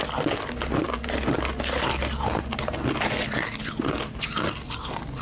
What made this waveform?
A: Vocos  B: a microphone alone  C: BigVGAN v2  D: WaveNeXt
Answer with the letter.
B